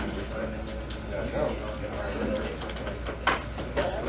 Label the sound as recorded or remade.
recorded